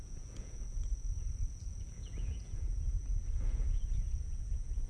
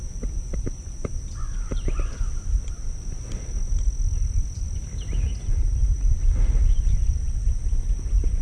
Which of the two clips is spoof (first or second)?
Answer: first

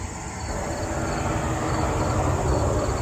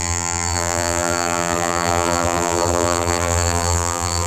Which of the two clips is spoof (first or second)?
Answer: second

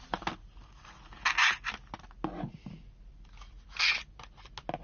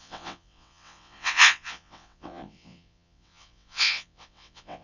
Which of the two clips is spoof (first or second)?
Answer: second